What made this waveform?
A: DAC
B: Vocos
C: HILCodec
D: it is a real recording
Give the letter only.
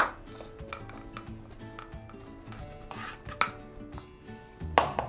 D